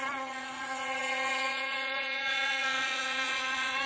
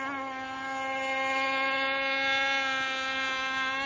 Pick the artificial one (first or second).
first